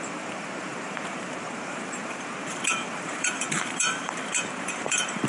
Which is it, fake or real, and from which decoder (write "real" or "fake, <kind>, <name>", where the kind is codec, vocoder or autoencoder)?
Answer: fake, vocoder, BigVGAN v2